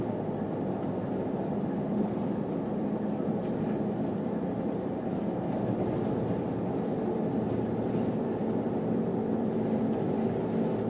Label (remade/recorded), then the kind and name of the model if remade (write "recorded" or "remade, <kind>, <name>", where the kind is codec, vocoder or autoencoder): recorded